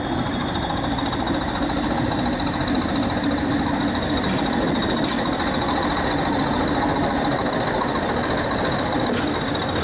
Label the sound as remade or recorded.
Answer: recorded